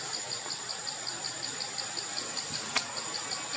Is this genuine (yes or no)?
yes